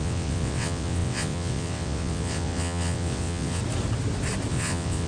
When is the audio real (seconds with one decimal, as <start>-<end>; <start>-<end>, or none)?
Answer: 3.6-4.5